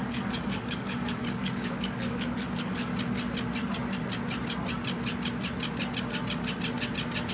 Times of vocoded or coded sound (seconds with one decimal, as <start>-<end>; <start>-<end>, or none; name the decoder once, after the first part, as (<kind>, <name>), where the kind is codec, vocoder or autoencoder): 0.0-2.9 (codec, DAC)